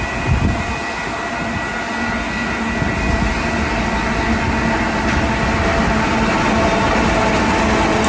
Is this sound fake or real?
real